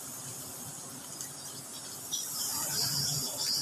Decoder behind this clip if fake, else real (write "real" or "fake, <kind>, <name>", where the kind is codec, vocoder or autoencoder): real